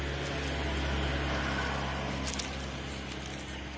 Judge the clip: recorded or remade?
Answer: recorded